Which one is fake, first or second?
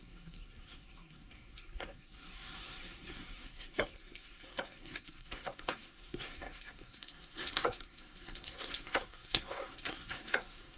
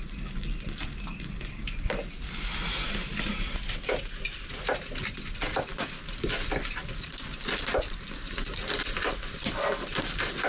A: first